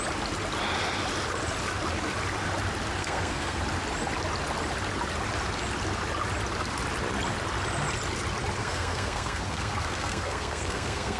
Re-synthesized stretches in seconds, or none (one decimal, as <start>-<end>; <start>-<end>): 3.0-3.6; 8.6-11.2